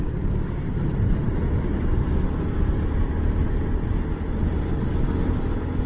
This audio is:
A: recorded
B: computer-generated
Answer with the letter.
A